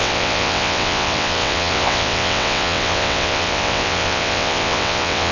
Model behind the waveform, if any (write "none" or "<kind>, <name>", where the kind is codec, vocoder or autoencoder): vocoder, WaveNeXt